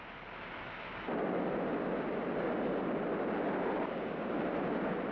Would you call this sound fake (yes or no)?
no